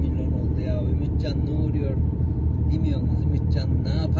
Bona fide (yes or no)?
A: no